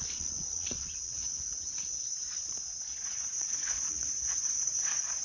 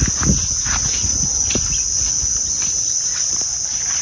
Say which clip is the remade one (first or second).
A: first